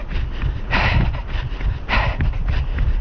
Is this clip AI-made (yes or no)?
no